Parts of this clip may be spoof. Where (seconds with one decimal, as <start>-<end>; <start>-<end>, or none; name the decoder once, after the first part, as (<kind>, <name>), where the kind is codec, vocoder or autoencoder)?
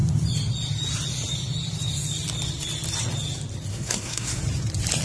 3.7-4.4 (codec, SNAC)